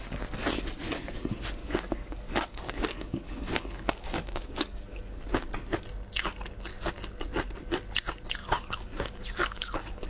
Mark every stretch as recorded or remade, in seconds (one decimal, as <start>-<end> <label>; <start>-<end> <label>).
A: 0.0-1.6 recorded; 1.6-5.0 remade; 5.0-8.4 recorded; 8.4-10.1 remade